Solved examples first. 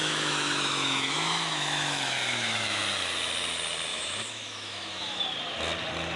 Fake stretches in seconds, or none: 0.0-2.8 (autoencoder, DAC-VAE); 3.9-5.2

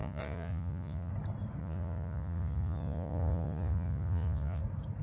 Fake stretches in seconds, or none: 0.0-1.1 (vocoder, Vocos); 1.6-4.6

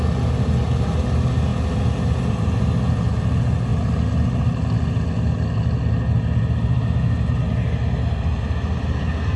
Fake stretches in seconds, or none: none

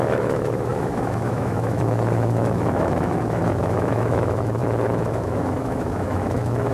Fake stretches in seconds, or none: 0.0-6.7 (autoencoder, DAC-VAE)

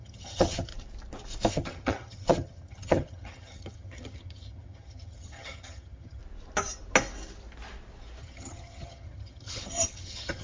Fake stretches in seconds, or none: 0.0-0.7 (vocoder, HiFi-GAN); 1.5-6.2; 8.2-10.4

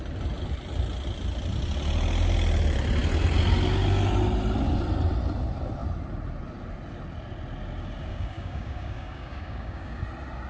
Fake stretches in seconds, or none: 8.1-10.0 (codec, DAC)

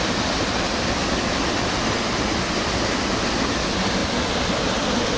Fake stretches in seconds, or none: none

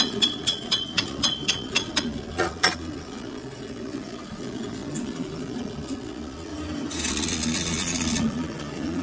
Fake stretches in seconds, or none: 0.0-6.5 (vocoder, Vocos); 7.1-9.0